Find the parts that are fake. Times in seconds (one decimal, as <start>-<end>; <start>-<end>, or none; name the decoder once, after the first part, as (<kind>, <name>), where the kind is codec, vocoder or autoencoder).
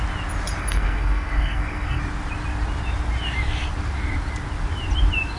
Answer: 0.6-2.0 (codec, SNAC)